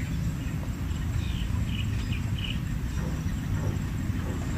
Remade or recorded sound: recorded